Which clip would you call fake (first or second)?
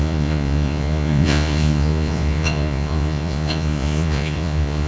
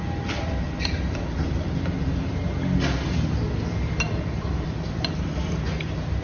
first